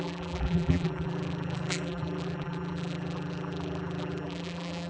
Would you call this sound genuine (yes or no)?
no